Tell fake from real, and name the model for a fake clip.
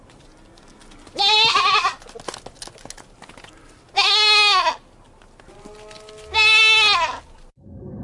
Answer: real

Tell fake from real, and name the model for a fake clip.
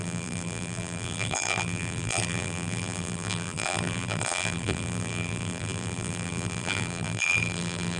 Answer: fake, vocoder, BigVGAN v2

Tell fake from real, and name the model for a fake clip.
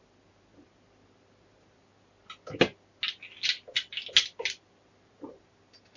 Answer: real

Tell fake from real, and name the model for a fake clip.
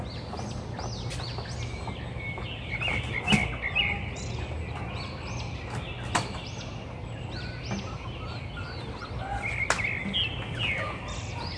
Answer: real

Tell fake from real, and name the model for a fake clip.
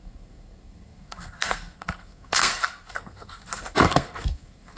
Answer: fake, codec, SNAC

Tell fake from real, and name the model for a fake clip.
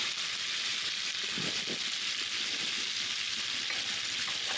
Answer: real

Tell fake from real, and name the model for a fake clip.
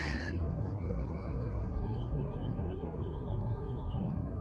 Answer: fake, codec, SNAC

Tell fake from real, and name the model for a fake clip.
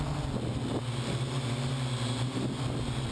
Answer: real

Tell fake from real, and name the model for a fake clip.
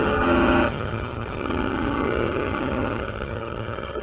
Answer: fake, vocoder, HiFi-GAN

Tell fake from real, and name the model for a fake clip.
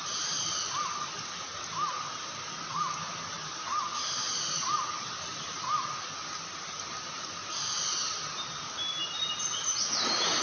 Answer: real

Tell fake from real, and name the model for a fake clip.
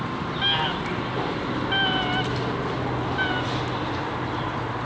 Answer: real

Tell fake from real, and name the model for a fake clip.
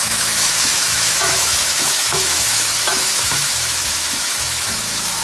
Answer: fake, autoencoder, DAC-VAE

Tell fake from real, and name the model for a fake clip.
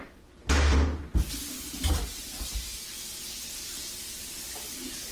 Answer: real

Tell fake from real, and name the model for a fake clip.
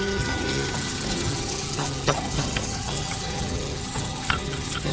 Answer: fake, vocoder, HiFi-GAN